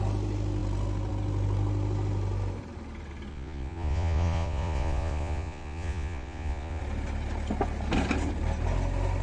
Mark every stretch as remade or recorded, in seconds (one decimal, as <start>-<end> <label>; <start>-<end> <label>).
0.0-3.3 recorded; 3.3-6.8 remade; 6.8-9.2 recorded